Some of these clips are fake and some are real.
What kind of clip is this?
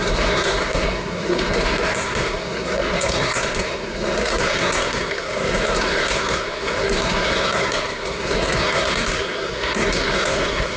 fake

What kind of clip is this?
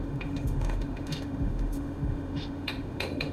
fake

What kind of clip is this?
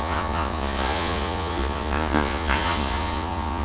fake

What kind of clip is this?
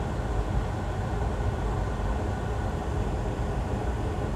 real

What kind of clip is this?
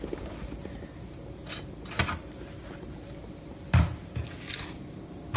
real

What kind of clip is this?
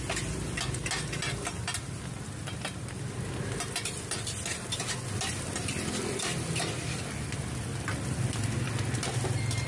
real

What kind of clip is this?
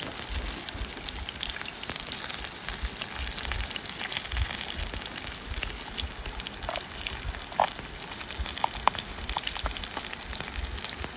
real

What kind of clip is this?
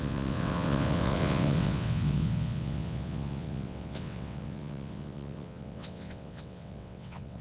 fake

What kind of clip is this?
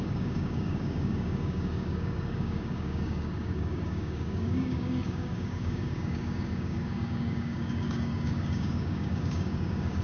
fake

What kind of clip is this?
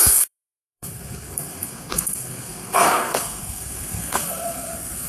fake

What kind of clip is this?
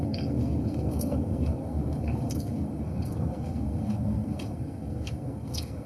fake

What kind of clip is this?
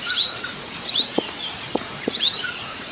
fake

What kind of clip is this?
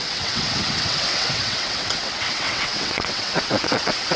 fake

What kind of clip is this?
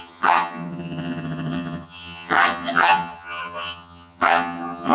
fake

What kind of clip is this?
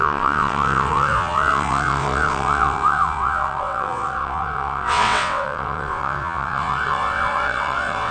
fake